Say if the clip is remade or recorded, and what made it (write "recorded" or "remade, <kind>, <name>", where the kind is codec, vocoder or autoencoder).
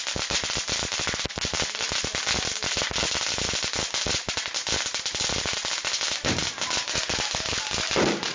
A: recorded